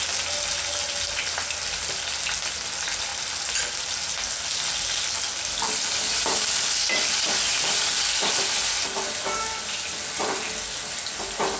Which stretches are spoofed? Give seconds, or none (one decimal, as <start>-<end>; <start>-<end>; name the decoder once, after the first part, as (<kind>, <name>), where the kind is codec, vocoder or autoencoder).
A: none